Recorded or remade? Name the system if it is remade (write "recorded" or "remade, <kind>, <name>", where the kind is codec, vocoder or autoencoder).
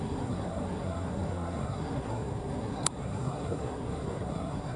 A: remade, codec, SNAC